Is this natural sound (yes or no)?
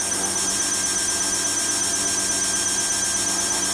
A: yes